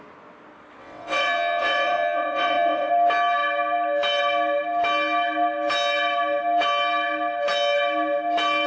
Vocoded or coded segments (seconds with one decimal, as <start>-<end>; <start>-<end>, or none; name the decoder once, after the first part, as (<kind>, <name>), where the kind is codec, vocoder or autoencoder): 0.8-2.9 (vocoder, WaveNeXt)

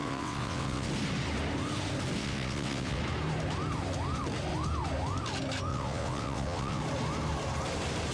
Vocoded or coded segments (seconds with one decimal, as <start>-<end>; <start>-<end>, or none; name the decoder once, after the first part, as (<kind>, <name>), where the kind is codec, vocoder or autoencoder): 0.0-0.9 (vocoder, WaveNeXt); 2.2-3.0; 5.7-6.8

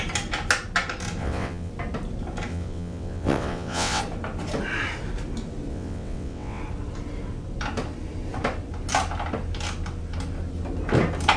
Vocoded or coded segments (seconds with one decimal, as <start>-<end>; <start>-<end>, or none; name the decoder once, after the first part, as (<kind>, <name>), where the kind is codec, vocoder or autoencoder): 1.2-1.7 (vocoder, WaveNeXt); 2.5-4.0; 5.7-6.6

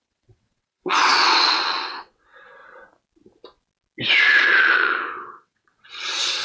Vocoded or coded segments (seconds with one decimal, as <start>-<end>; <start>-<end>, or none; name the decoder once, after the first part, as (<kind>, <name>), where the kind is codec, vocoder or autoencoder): 0.0-2.6 (vocoder, WaveNeXt); 4.2-6.4